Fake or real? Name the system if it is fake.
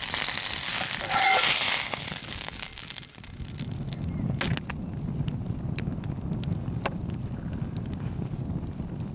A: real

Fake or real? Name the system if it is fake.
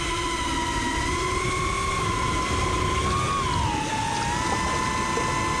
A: real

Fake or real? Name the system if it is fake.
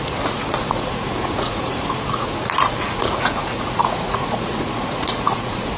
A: fake, vocoder, Vocos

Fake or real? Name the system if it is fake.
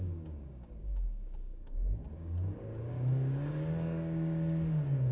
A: fake, codec, DAC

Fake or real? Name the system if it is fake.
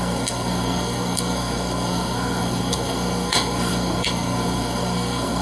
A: fake, codec, SNAC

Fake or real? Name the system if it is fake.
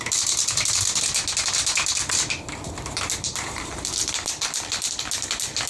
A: fake, vocoder, BigVGAN v2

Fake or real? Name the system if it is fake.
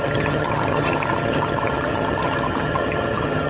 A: fake, vocoder, HiFi-GAN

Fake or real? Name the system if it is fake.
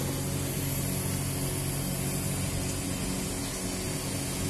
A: real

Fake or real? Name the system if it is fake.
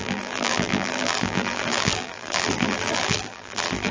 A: fake, vocoder, BigVGAN v2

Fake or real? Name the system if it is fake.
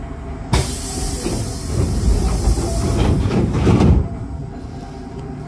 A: fake, vocoder, BigVGAN v2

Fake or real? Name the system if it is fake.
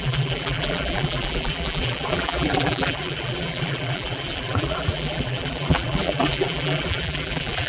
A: fake, vocoder, BigVGAN v2